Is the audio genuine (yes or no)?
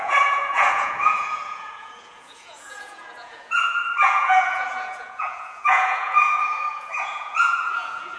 no